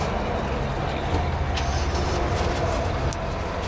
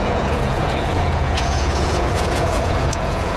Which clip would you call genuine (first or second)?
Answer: first